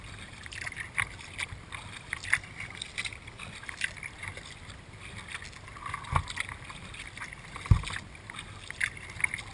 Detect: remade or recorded recorded